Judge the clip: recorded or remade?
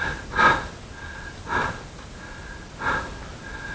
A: recorded